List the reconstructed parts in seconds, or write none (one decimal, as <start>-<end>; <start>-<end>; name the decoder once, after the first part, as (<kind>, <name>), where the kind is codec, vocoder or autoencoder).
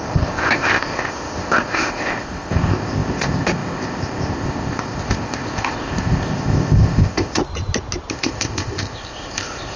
0.0-7.4 (codec, ZipCodec); 8.1-9.8